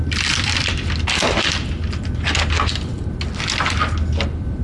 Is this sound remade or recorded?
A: recorded